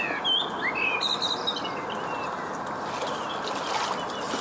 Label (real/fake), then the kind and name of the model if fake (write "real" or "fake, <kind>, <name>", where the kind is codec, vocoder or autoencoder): real